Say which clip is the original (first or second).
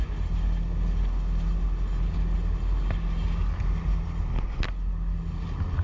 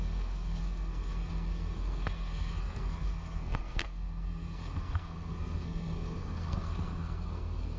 first